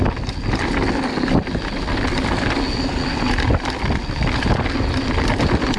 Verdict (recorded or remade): recorded